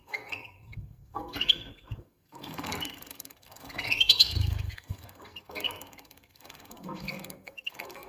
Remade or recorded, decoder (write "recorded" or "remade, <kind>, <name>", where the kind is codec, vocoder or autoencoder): remade, codec, SNAC